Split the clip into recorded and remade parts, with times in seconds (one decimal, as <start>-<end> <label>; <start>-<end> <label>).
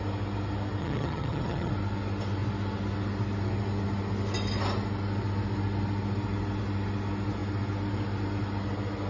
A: 0.0-0.8 recorded; 0.8-1.7 remade; 1.7-9.1 recorded